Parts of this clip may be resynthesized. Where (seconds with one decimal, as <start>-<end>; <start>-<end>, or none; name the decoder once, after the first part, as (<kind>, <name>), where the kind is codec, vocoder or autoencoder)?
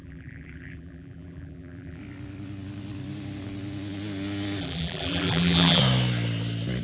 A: 0.0-2.0 (vocoder, BigVGAN v2); 4.6-5.8